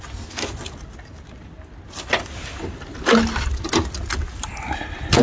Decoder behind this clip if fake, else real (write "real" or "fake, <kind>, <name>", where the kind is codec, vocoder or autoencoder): real